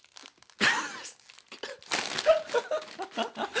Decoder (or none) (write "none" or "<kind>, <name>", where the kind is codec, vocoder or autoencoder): none